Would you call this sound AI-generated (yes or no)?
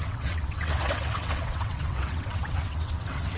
yes